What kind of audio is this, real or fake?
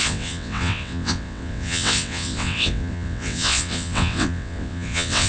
fake